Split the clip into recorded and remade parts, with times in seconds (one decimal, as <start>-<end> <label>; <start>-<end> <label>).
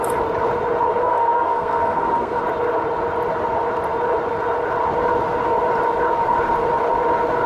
0.0-1.0 recorded; 1.0-2.4 remade; 2.4-7.5 recorded